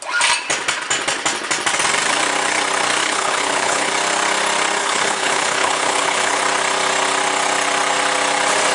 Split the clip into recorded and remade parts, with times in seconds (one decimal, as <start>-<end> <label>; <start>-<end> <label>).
0.0-3.0 recorded; 3.0-3.9 remade; 3.9-4.8 recorded; 4.8-6.4 remade; 6.4-8.7 recorded